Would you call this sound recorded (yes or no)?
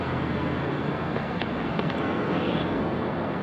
no